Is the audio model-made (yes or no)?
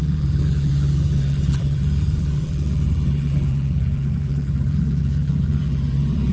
yes